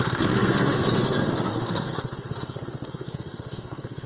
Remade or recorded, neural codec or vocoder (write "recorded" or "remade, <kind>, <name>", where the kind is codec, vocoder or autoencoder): remade, codec, SNAC